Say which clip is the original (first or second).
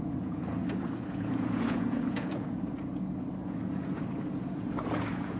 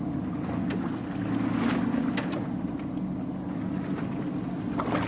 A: second